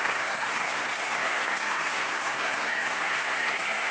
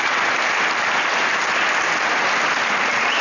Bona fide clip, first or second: second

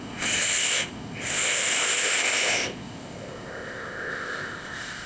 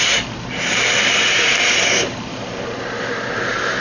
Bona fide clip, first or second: second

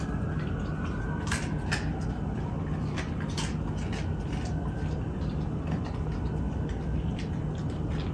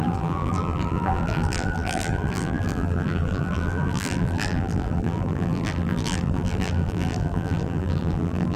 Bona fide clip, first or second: first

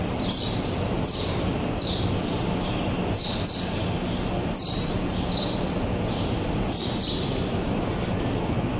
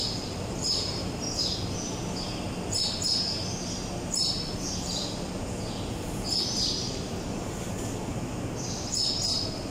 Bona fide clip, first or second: second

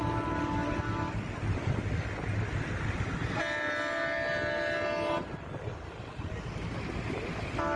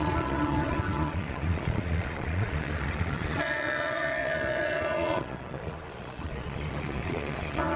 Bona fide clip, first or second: first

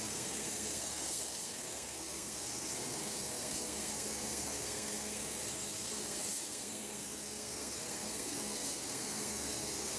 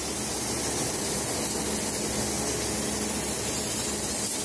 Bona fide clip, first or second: second